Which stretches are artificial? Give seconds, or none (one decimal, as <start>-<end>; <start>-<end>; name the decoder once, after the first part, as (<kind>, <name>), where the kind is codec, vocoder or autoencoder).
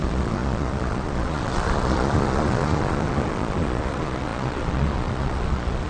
0.0-5.9 (vocoder, Vocos)